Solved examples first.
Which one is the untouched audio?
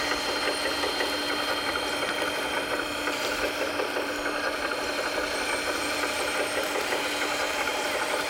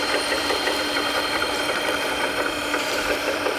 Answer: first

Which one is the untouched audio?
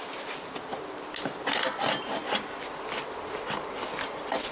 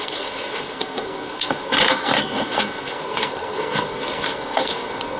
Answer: first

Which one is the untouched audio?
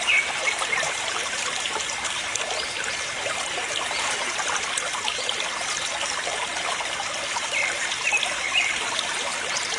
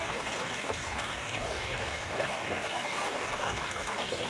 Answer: first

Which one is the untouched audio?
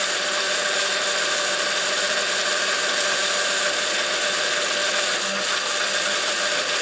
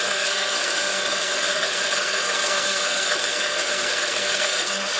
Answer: first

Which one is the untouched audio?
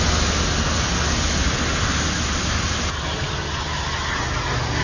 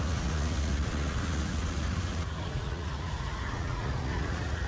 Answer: first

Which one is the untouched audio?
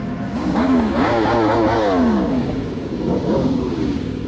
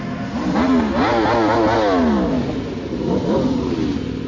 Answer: second